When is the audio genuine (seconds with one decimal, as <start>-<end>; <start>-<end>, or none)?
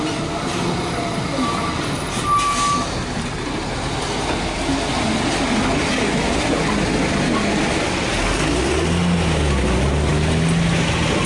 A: 0.0-11.3